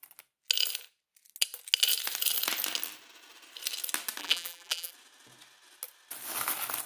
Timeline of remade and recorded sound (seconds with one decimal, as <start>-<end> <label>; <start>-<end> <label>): 0.0-4.2 recorded; 4.2-4.9 remade; 4.9-6.9 recorded